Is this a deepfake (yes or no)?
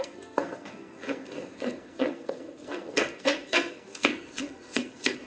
yes